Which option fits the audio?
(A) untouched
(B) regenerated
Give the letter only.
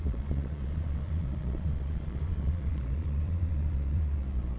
B